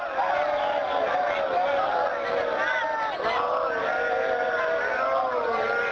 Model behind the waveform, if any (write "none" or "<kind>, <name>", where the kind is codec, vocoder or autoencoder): none